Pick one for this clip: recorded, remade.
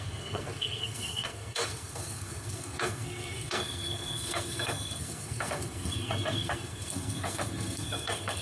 remade